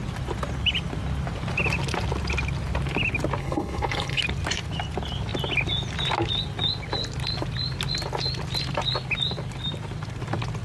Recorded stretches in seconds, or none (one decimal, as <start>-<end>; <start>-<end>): 0.0-3.4; 4.2-10.6